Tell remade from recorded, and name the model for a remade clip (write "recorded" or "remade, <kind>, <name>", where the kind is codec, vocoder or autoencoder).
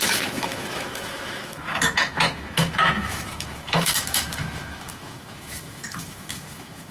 remade, autoencoder, DAC-VAE